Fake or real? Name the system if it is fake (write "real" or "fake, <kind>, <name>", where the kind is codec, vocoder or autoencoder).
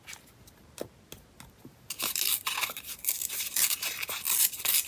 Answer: real